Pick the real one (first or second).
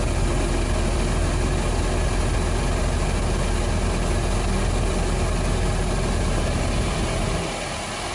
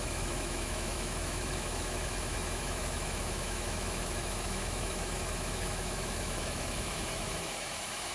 first